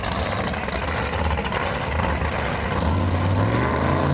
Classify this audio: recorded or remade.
recorded